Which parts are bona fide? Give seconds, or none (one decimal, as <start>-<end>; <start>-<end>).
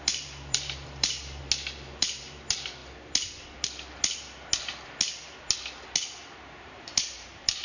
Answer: 1.4-2.0; 2.8-6.5